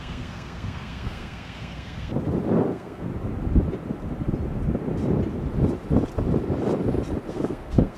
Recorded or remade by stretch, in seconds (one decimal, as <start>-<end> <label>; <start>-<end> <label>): 0.0-2.1 remade; 2.1-2.7 recorded; 2.7-3.1 remade; 3.1-7.3 recorded; 7.3-8.0 remade